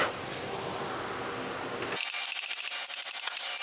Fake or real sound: real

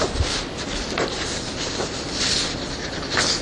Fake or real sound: real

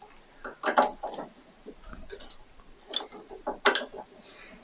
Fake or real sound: real